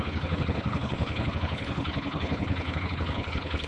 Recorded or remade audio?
remade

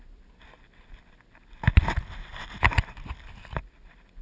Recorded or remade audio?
recorded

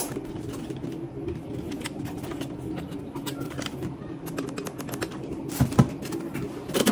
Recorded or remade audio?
recorded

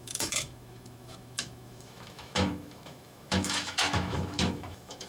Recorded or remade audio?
remade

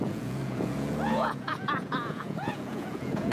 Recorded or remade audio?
remade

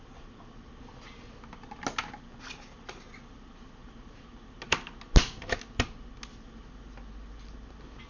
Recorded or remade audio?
recorded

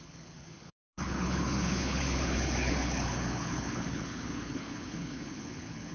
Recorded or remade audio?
remade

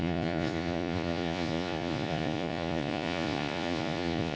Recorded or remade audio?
remade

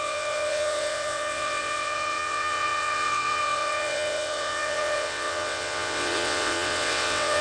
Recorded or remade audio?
remade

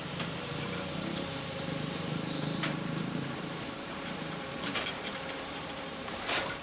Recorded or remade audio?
remade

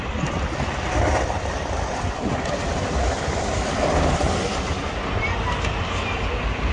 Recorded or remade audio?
recorded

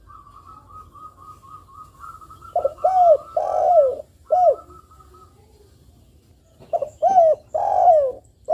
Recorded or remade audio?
recorded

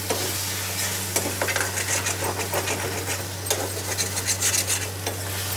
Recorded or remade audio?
recorded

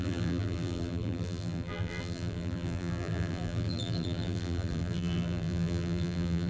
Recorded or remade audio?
remade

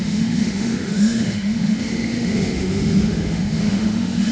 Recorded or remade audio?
remade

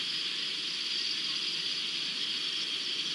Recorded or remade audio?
recorded